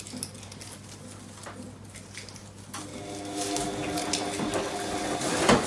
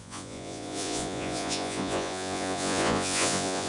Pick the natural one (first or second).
first